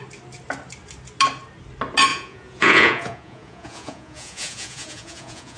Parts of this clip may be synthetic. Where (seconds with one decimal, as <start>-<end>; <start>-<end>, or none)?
2.1-5.6